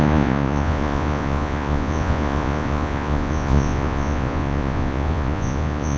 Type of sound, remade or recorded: remade